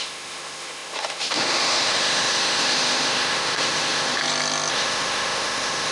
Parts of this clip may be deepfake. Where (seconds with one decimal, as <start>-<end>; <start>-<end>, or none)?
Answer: 0.0-4.2; 4.7-5.9